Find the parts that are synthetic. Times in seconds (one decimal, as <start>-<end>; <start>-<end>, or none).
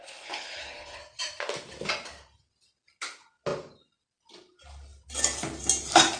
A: 0.0-1.0